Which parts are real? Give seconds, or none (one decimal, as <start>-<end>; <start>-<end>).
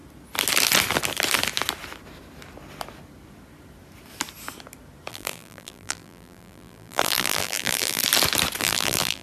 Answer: 0.0-5.1; 8.0-8.6